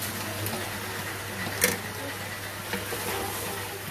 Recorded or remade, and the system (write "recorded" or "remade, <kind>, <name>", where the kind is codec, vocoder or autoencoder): recorded